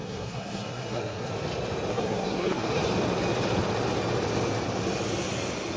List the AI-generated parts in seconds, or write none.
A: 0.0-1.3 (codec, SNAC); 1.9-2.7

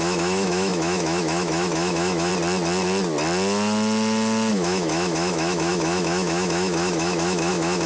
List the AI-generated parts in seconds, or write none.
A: 0.0-2.3 (autoencoder, DAC-VAE); 4.5-7.9

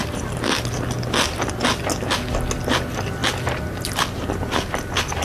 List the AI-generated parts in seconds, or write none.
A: none

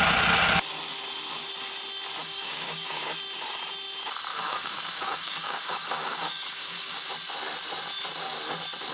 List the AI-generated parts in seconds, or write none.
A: 2.2-3.0 (codec, DAC); 4.3-7.1

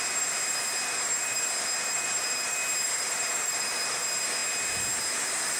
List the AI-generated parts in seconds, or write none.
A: 0.0-4.4 (vocoder, BigVGAN v2); 5.0-5.6

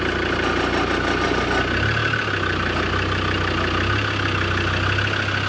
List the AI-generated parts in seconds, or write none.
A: none

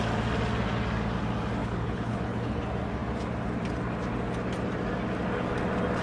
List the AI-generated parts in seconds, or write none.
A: 1.6-2.6 (codec, HILCodec)

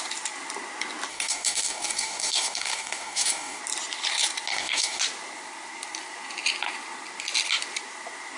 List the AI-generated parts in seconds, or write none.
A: 1.1-3.6 (codec, DAC); 4.5-5.0